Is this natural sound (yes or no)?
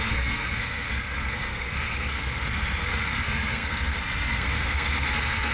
no